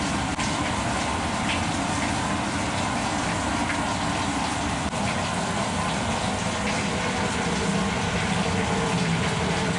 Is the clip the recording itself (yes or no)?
yes